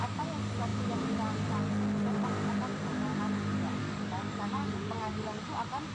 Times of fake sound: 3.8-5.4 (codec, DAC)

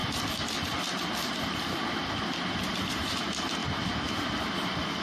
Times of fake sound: none

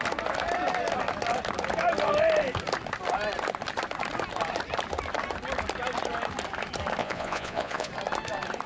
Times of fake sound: 7.0-7.9 (vocoder, Vocos)

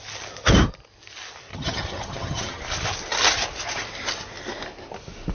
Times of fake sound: 1.5-2.6 (vocoder, HiFi-GAN)

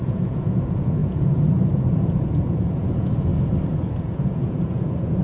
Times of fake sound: 0.0-3.3 (vocoder, Vocos); 4.0-5.2

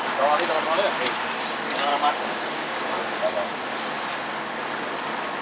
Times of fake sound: 1.9-3.2 (codec, DAC)